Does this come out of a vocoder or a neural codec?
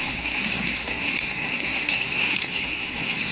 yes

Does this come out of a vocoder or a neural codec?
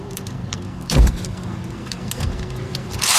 yes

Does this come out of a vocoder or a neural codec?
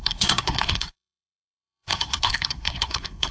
yes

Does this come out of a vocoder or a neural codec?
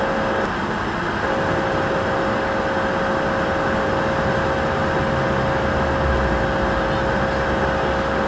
no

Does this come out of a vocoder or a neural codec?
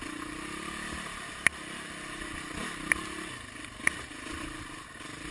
no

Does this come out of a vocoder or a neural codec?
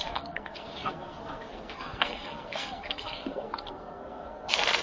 yes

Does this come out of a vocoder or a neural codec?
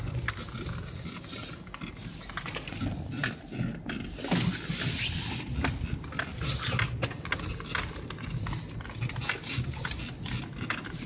no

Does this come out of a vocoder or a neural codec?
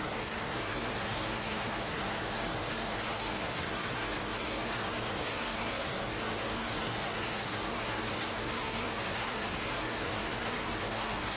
yes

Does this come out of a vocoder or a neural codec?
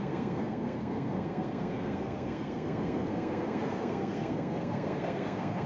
yes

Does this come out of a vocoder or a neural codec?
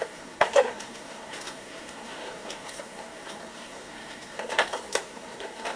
yes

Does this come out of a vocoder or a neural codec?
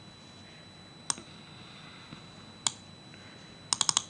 no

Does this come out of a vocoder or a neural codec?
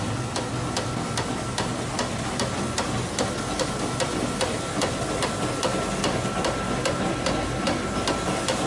no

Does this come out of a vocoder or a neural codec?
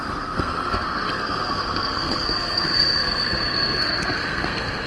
yes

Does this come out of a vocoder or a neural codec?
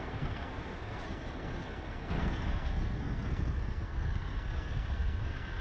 yes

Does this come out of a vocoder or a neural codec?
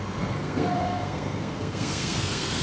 yes